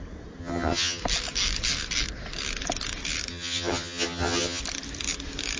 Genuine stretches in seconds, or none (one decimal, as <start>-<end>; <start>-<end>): 0.0-0.4; 1.0-3.3; 4.6-5.6